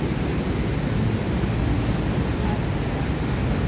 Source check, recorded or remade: recorded